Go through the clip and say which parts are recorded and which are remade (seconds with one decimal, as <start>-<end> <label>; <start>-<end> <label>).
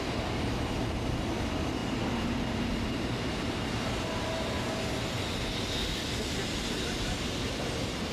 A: 0.0-8.1 recorded